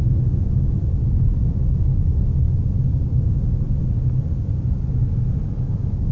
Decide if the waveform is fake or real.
real